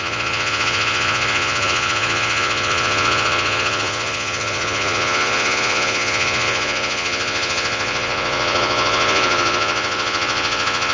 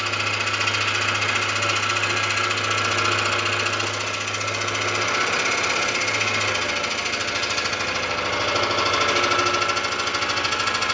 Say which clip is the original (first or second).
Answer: second